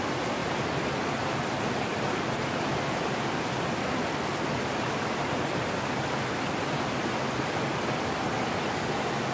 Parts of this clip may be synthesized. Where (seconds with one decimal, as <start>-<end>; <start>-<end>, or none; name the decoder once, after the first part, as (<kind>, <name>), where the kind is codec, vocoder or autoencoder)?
none